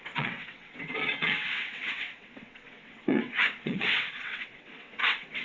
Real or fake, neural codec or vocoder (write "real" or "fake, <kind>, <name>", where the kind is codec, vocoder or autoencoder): fake, vocoder, WaveNeXt